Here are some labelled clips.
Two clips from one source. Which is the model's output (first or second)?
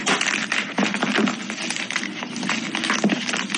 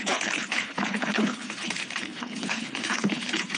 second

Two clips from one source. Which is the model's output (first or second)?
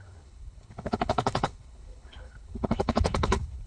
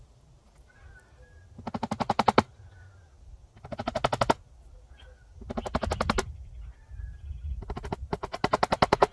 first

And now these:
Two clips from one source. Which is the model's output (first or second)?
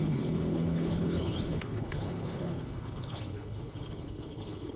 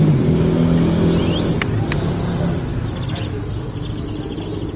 first